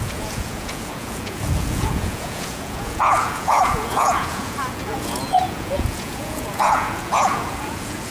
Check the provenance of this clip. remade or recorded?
remade